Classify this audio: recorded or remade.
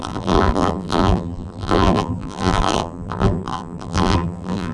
remade